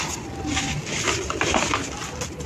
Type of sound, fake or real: real